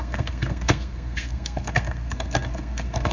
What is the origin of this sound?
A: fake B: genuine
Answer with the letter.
A